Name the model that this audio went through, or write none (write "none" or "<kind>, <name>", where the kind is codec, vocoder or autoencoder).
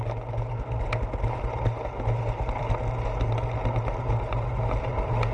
none